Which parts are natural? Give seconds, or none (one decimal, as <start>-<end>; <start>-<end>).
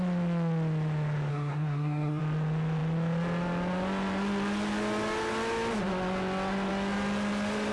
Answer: 0.0-1.3; 2.2-7.7